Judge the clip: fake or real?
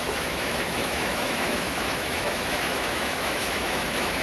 fake